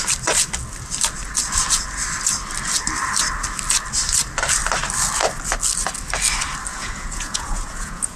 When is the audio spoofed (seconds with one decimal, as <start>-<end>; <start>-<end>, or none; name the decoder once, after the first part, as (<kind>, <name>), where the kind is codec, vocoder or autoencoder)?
6.7-8.2 (vocoder, Vocos)